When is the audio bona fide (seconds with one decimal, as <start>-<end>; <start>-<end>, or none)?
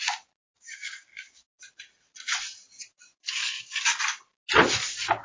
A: 0.0-0.5; 1.6-3.2; 4.0-5.2